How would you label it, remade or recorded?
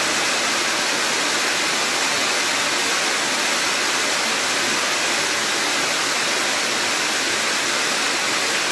recorded